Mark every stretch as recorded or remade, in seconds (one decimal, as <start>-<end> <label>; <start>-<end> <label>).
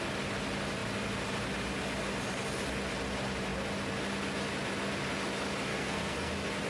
0.0-5.7 recorded; 5.7-6.3 remade; 6.3-6.7 recorded